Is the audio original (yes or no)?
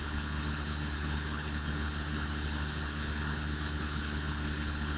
no